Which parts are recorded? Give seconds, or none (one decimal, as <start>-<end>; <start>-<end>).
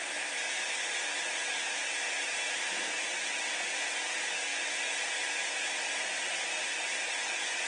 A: 0.0-7.7